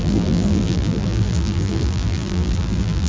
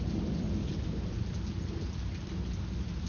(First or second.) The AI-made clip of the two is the first